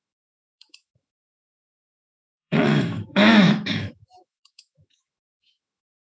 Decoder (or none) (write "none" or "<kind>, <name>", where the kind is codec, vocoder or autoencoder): autoencoder, DAC-VAE